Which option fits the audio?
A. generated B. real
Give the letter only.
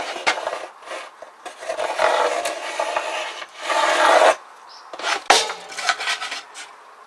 B